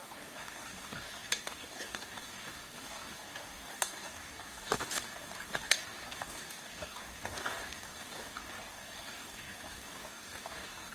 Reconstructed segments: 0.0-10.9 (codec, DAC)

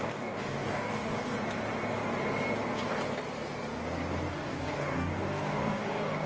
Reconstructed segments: 0.0-1.3 (codec, DAC); 4.3-6.3

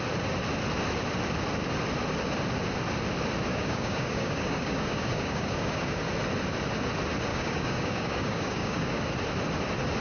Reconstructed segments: 3.5-6.0 (codec, DAC); 7.3-9.0

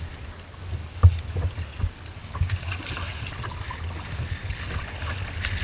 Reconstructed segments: 2.2-2.7 (codec, DAC)

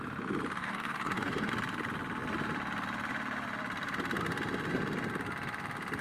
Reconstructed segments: 0.6-1.5 (codec, DAC)

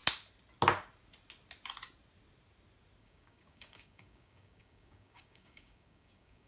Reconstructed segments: 3.0-6.5 (codec, DAC)

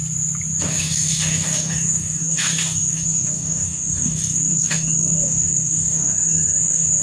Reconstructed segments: 0.6-7.0 (codec, DAC)

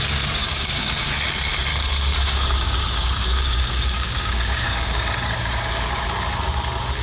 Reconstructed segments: 0.4-1.2 (codec, DAC); 1.7-5.9